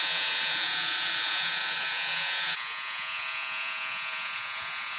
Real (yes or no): no